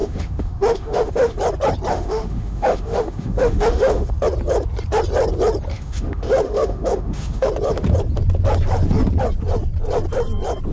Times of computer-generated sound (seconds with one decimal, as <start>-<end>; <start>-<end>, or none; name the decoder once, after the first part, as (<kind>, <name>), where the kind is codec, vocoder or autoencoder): 0.0-1.4 (autoencoder, DAC-VAE); 1.9-4.1; 5.7-7.5